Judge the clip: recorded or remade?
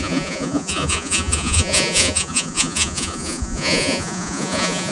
remade